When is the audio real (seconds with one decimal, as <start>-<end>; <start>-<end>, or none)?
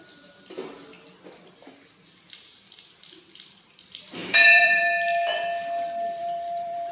0.0-4.2; 4.8-6.2